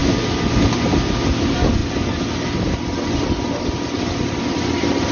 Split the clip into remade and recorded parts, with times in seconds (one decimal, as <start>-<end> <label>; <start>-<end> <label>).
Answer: 0.0-5.1 recorded